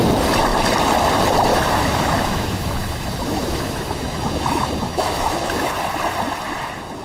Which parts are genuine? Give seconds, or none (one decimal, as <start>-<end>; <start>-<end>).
0.0-1.5; 5.7-7.0